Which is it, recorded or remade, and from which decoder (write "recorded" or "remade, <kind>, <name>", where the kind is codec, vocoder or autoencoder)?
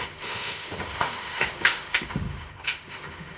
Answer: remade, autoencoder, DAC-VAE